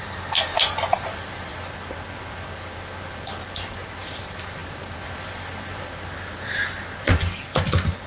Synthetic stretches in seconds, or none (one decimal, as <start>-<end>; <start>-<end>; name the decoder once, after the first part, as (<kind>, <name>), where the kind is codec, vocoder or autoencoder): 0.0-7.1 (vocoder, BigVGAN v2)